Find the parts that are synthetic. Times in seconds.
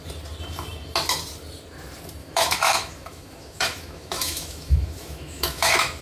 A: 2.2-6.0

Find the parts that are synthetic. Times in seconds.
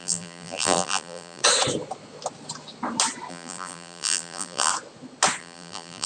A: 0.0-1.4; 3.3-4.7; 5.4-6.1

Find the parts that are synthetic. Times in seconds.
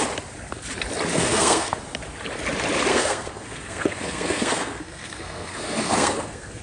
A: 1.1-1.8; 2.9-6.6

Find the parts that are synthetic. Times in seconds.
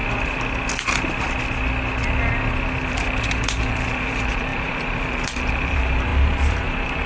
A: 2.9-7.1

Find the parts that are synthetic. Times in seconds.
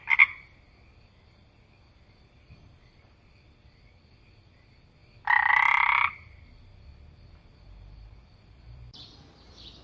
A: 2.1-9.8